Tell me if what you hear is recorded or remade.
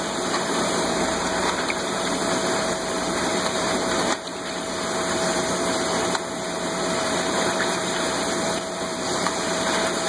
remade